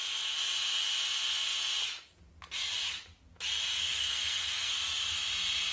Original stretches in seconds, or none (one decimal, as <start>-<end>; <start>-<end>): 0.0-3.8; 4.7-5.7